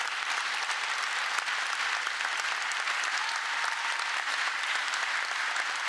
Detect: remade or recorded recorded